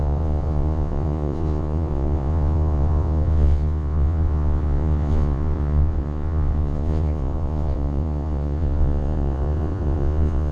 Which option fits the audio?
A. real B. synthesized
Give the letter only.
B